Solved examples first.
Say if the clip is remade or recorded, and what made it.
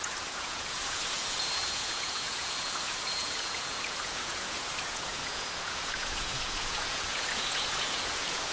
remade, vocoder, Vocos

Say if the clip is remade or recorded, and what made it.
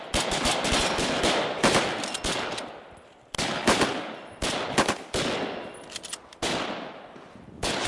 recorded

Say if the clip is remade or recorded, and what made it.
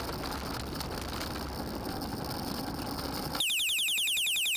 recorded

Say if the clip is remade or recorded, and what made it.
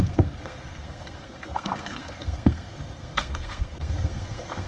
remade, codec, SNAC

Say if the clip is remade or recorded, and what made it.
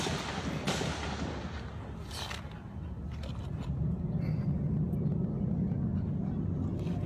recorded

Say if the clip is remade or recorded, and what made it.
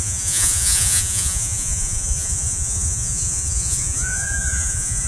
remade, vocoder, Vocos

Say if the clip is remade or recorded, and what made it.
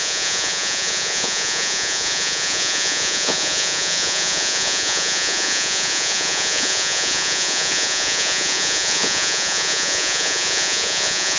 remade, vocoder, Vocos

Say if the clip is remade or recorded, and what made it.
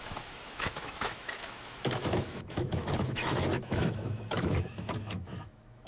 remade, autoencoder, DAC-VAE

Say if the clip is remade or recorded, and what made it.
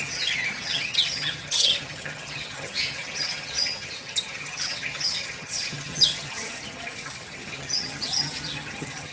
remade, vocoder, HiFi-GAN